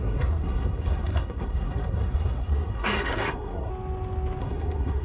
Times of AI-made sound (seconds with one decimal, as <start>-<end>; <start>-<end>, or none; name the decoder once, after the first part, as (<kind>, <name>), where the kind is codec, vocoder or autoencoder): 0.0-3.7 (codec, SNAC); 4.4-5.0